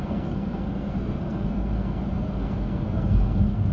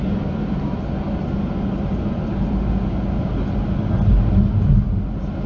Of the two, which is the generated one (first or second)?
first